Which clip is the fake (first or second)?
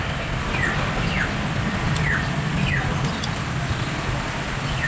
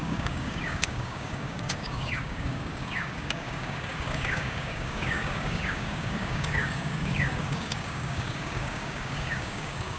second